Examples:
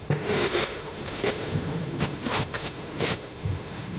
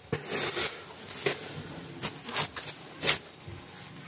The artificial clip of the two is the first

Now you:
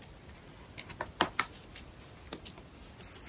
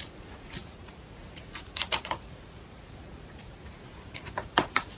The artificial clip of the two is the second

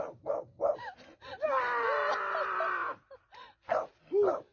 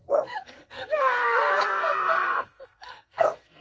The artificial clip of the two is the second